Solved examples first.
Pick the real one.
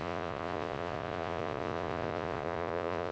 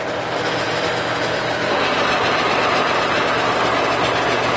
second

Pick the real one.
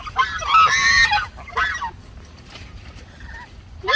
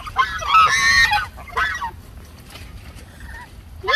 second